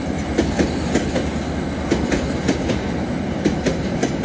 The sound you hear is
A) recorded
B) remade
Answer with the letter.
A